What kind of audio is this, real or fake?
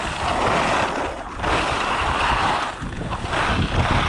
real